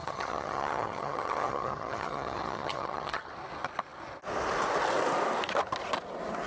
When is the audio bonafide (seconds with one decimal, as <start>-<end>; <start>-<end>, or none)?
3.3-6.5